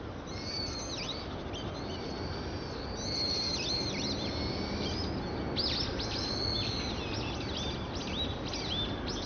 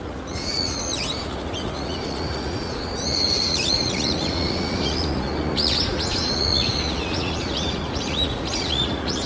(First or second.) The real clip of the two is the first